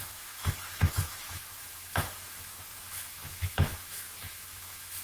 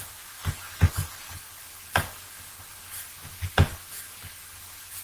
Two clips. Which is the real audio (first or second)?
second